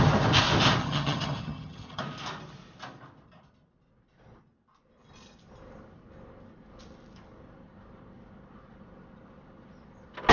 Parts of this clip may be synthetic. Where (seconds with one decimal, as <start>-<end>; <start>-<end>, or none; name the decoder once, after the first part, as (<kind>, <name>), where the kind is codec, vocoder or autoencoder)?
0.8-2.0 (vocoder, HiFi-GAN)